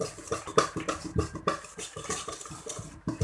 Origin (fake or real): real